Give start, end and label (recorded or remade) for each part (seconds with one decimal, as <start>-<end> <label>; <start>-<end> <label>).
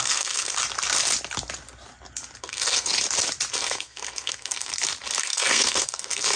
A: 0.0-0.6 remade; 0.6-2.4 recorded; 2.4-2.9 remade; 2.9-3.5 recorded; 3.5-4.7 remade; 4.7-5.2 recorded; 5.2-6.4 remade